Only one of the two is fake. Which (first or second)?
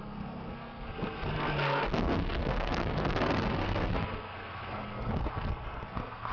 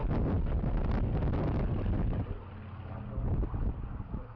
first